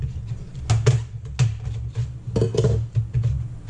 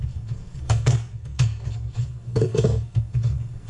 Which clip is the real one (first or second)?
first